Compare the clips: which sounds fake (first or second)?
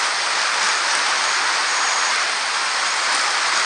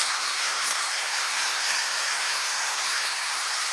second